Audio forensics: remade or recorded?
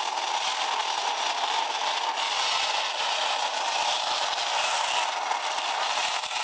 recorded